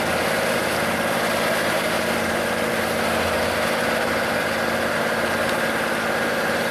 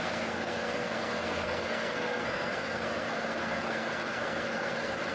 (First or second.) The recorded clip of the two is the first